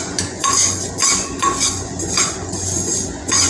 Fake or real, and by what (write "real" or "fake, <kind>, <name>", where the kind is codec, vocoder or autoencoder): fake, vocoder, Vocos